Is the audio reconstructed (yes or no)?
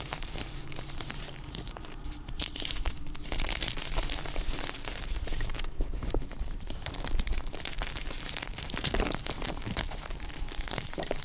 yes